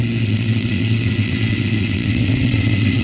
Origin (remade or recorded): remade